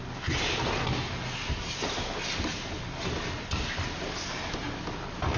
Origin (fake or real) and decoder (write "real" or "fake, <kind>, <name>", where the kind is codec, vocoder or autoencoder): real